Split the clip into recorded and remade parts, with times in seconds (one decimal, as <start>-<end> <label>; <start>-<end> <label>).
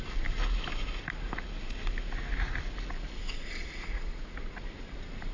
0.0-3.2 recorded; 3.2-4.6 remade; 4.6-5.3 recorded